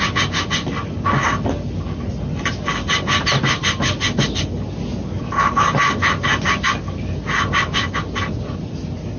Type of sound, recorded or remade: recorded